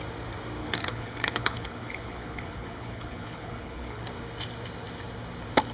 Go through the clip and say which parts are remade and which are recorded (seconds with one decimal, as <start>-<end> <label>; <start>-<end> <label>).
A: 0.0-0.6 recorded; 0.6-4.0 remade; 4.0-5.7 recorded